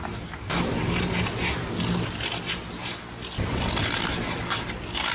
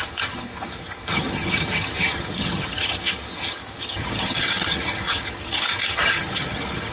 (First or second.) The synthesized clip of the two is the second